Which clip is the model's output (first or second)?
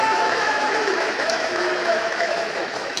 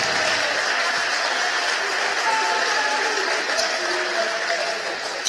first